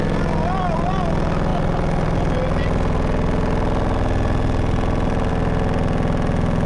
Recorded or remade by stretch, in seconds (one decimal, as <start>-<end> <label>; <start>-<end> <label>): 0.0-6.7 recorded